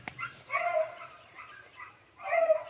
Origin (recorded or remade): remade